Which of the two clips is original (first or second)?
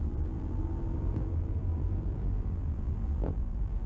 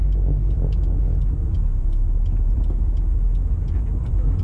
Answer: second